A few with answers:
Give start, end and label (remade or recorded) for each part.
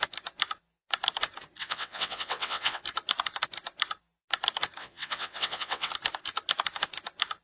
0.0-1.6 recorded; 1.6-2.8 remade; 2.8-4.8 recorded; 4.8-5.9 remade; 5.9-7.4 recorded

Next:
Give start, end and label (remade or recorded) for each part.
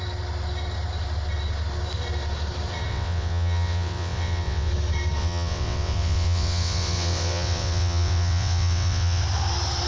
0.0-2.9 recorded; 2.9-4.7 remade; 4.7-5.2 recorded; 5.2-9.2 remade; 9.2-9.9 recorded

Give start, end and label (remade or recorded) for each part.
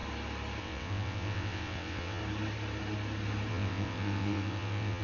0.0-0.6 recorded; 0.6-2.2 remade; 2.2-3.5 recorded; 3.5-5.0 remade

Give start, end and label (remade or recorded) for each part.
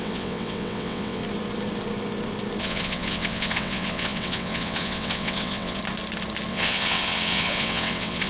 0.0-1.2 remade; 1.2-2.6 recorded; 2.6-5.8 remade; 5.8-6.5 recorded; 6.5-8.3 remade